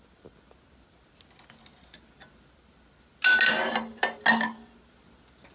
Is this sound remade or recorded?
recorded